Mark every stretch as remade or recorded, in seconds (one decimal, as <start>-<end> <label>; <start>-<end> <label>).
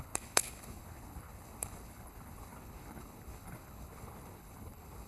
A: 0.0-5.1 remade